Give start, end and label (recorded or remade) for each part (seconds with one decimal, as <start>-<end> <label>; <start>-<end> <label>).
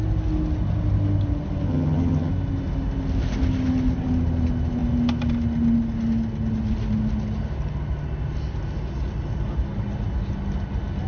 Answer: 0.0-1.7 recorded; 1.7-2.3 remade; 2.3-11.1 recorded